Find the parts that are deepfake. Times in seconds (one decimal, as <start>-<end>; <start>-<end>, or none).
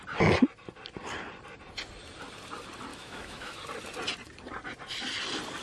2.9-3.6